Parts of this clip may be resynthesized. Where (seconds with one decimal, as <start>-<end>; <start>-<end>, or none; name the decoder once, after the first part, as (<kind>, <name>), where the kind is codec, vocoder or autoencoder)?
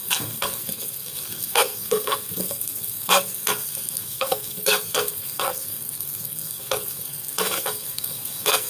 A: 0.0-8.7 (codec, SNAC)